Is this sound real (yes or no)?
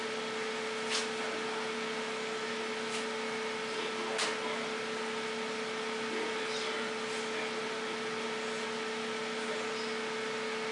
yes